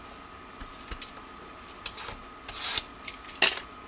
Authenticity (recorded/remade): recorded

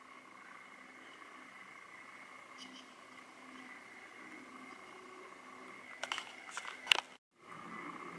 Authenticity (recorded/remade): recorded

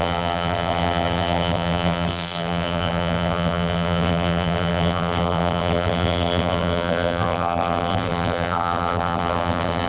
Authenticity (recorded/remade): remade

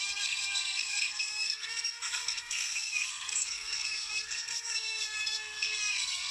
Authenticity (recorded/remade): remade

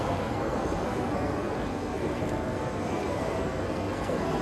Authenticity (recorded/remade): remade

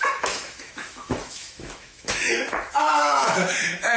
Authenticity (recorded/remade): remade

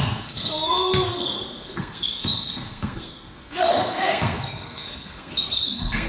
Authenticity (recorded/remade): remade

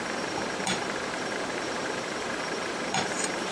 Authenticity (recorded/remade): remade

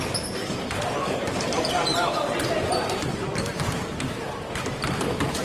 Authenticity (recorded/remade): remade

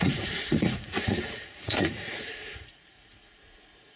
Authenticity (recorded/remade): remade